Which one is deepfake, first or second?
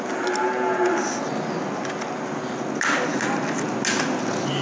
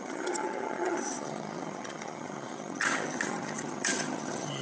second